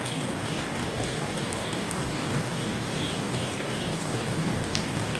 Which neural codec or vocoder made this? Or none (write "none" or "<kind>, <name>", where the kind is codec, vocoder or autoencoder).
codec, DAC